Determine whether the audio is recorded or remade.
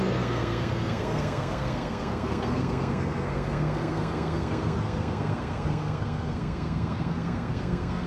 remade